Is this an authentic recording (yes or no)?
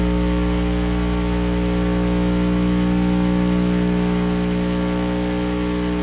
yes